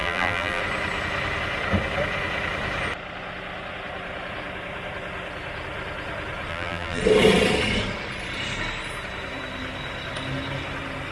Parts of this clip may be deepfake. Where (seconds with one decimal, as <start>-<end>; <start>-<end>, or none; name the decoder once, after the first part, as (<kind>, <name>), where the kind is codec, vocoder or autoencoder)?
0.0-0.6 (vocoder, BigVGAN v2); 6.5-7.0